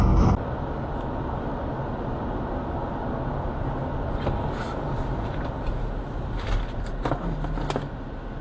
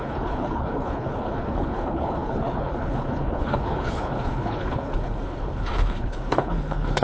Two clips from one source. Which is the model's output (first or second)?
second